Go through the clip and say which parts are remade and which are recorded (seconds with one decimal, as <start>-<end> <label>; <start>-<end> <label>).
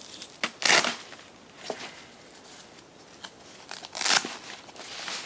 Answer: 0.0-5.3 recorded